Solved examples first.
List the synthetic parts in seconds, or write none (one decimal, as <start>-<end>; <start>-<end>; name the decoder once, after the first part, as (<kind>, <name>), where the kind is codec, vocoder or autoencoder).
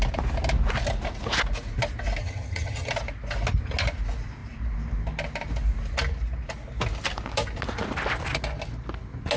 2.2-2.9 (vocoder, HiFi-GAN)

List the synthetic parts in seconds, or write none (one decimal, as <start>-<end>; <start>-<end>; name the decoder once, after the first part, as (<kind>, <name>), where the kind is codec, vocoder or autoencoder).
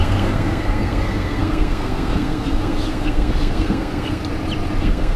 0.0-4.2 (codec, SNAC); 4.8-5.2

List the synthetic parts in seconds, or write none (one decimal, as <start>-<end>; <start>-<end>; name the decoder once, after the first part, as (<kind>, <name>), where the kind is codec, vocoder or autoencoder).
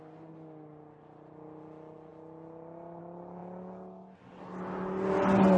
none